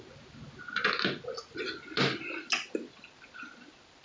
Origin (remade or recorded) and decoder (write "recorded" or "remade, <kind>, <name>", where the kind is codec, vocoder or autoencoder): recorded